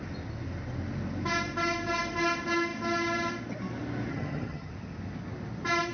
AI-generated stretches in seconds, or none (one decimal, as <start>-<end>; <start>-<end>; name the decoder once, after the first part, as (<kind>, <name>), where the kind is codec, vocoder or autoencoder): 4.1-4.7 (vocoder, HiFi-GAN)